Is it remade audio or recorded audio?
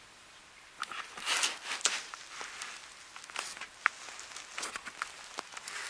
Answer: recorded